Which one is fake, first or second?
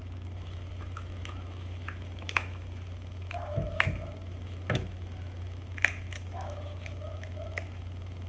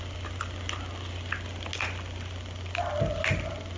first